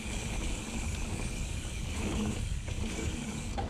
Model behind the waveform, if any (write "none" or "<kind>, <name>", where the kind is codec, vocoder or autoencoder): codec, DAC